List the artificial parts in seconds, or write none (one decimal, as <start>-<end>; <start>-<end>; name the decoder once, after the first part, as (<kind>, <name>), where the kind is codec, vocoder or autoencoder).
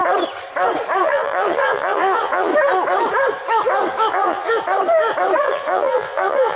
1.0-2.5 (vocoder, Vocos); 4.1-4.5; 5.4-6.6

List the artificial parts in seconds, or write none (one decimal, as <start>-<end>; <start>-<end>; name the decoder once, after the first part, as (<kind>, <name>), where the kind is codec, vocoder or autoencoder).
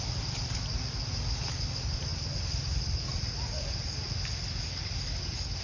none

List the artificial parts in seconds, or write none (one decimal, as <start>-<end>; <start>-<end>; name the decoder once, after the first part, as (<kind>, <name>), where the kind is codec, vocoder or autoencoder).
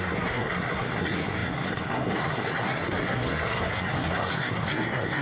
0.0-5.2 (codec, SNAC)